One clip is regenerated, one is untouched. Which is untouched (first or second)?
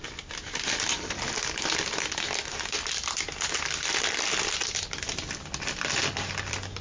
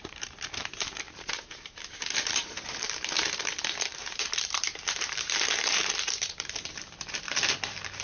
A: first